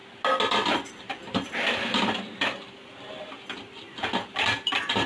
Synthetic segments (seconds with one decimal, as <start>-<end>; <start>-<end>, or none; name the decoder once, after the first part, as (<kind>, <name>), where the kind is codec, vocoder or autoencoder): 1.0-5.1 (vocoder, BigVGAN v2)